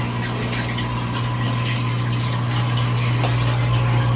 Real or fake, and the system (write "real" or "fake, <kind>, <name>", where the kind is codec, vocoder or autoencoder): real